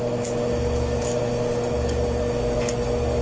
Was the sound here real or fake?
real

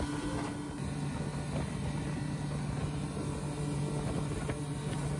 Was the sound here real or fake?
real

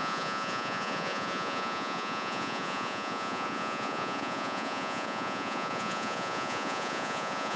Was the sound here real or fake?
fake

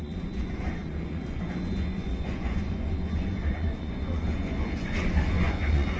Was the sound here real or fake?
fake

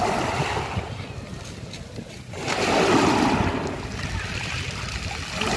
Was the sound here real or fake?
real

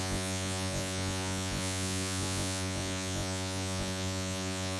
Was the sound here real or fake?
fake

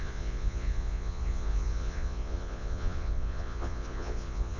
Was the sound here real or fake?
fake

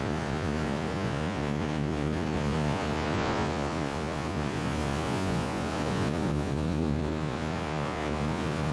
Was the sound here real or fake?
fake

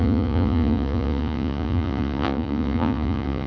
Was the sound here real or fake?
fake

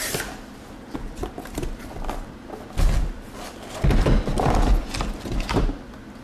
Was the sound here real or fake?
real